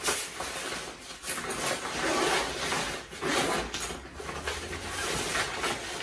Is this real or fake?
real